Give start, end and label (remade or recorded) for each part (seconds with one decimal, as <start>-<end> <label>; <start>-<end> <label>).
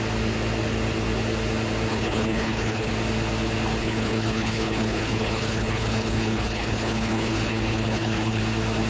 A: 0.0-1.9 recorded; 1.9-2.9 remade; 2.9-3.8 recorded; 3.8-8.4 remade; 8.4-8.9 recorded